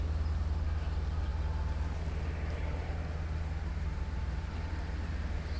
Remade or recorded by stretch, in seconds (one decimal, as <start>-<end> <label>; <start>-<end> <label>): 0.0-5.6 recorded